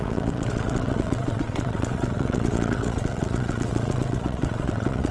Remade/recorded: remade